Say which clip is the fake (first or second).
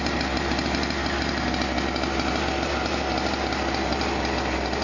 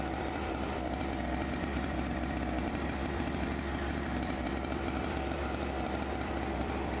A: second